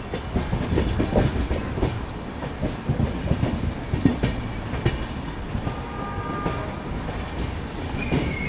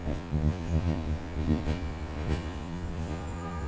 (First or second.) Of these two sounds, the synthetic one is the second